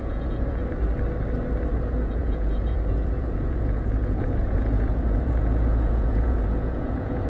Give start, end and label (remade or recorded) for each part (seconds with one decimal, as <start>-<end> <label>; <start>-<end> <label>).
0.0-0.6 remade; 0.6-1.7 recorded; 1.7-7.3 remade